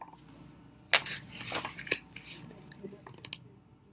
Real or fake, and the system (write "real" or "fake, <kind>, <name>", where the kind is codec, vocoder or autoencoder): real